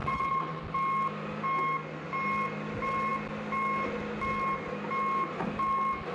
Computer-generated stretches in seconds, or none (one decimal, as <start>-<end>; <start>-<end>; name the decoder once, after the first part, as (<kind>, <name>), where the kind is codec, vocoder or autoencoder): 0.0-0.6 (vocoder, WaveNeXt)